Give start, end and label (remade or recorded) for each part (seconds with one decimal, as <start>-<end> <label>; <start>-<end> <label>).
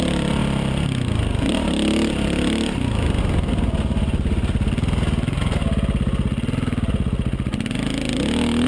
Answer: 0.0-8.7 recorded